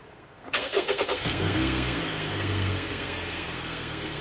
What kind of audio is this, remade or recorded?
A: remade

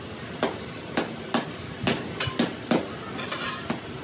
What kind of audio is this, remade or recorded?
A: recorded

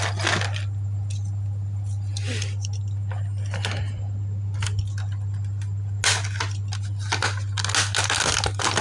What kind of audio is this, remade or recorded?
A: recorded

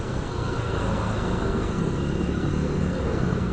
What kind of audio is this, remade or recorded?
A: remade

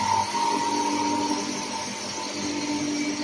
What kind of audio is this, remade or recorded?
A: recorded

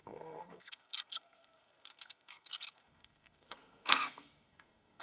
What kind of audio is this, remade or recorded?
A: remade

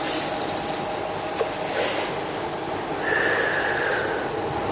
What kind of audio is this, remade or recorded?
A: recorded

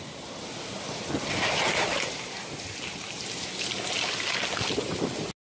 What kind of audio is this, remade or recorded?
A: recorded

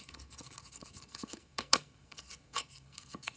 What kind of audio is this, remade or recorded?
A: remade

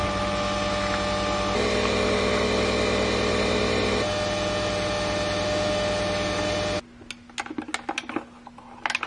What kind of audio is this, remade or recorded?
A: recorded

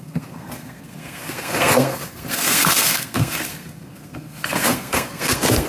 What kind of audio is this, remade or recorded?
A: remade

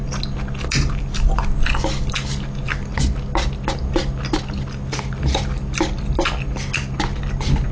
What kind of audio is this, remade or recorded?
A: recorded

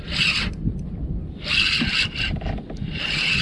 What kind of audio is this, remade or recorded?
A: recorded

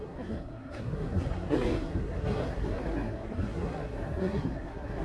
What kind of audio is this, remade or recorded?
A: remade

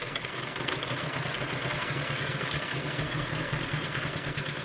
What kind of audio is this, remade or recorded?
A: remade